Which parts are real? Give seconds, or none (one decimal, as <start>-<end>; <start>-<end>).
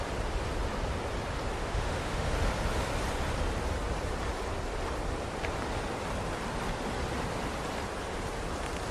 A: 0.0-1.6; 2.3-8.9